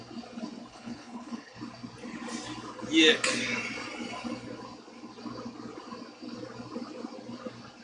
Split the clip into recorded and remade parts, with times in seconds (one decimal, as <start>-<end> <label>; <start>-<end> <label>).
0.0-0.7 recorded; 0.7-1.6 remade; 1.6-7.8 recorded